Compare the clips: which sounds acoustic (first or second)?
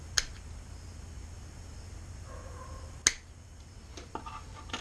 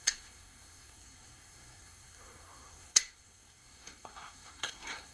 first